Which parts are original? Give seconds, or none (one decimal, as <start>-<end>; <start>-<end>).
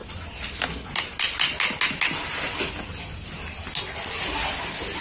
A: 0.6-5.0